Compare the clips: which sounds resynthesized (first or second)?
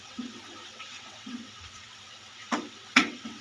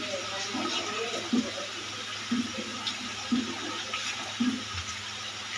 first